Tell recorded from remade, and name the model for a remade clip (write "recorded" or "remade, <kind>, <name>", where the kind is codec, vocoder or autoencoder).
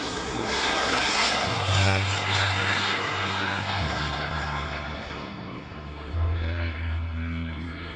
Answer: remade, codec, SNAC